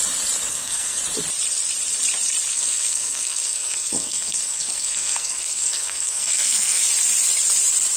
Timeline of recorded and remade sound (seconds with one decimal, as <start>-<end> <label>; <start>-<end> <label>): 0.0-0.5 recorded; 0.5-1.0 remade; 1.0-2.5 recorded; 2.5-6.8 remade; 6.8-8.0 recorded